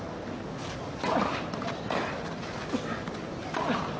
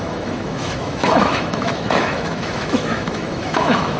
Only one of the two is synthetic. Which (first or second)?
second